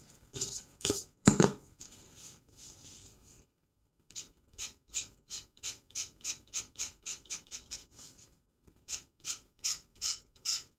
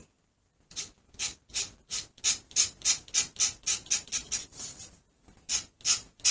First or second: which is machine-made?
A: first